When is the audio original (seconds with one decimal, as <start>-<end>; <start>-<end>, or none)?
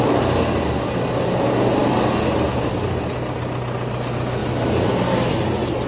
0.0-5.9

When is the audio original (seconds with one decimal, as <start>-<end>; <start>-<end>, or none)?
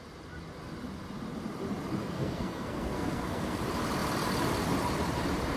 0.0-2.0; 3.6-5.6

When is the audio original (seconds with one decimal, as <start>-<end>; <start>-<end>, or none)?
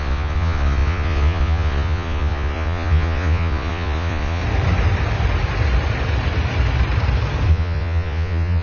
4.4-7.5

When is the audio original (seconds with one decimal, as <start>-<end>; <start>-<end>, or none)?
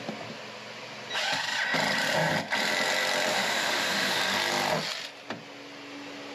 0.0-3.3; 4.2-6.3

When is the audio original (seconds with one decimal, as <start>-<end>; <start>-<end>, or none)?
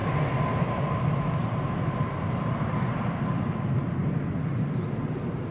0.0-5.5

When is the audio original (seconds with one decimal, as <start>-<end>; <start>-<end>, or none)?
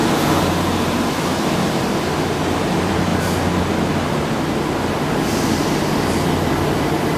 0.0-2.7; 3.1-6.5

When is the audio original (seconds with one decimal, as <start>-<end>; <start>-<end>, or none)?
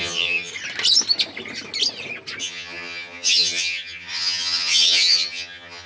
0.5-2.4